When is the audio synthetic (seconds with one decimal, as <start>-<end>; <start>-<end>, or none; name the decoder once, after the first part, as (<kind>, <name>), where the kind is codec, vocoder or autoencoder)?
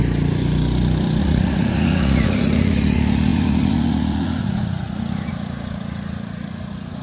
1.2-7.0 (vocoder, Vocos)